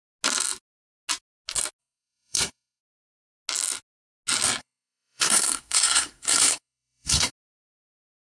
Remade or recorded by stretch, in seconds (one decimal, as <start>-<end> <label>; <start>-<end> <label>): 0.0-1.8 recorded; 1.8-2.8 remade; 2.8-4.6 recorded; 4.6-7.3 remade; 7.3-8.2 recorded